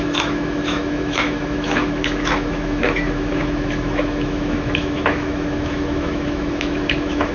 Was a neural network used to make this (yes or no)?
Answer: yes